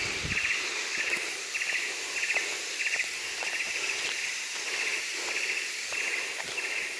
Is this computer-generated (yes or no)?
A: no